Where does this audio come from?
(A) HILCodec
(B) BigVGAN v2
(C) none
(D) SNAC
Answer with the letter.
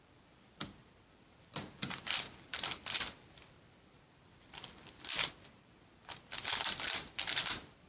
B